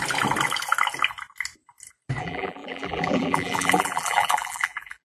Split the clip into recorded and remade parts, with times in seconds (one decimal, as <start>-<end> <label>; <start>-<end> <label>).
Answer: 0.0-2.2 recorded; 2.2-5.1 remade

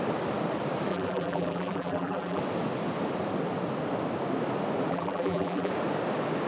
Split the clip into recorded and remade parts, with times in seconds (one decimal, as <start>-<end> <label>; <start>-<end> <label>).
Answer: 0.0-0.9 recorded; 0.9-2.4 remade; 2.4-4.9 recorded; 4.9-5.7 remade; 5.7-6.5 recorded